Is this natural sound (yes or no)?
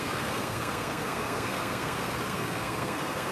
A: no